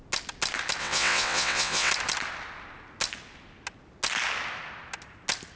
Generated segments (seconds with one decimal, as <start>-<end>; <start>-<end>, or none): 0.8-1.9